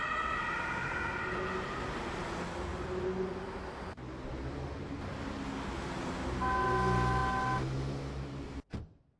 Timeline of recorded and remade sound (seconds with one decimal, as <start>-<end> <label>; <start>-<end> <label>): 0.0-9.2 recorded